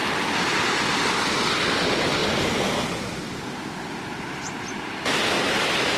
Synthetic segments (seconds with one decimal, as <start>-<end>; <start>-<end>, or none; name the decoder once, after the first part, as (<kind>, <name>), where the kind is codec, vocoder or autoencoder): none